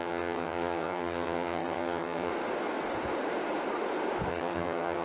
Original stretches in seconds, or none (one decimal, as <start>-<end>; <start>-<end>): 2.3-4.3